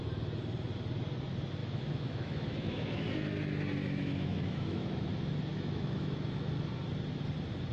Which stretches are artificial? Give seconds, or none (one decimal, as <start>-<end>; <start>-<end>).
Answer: 1.6-3.1; 3.8-5.1; 5.5-6.5